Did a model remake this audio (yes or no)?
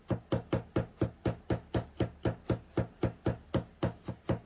no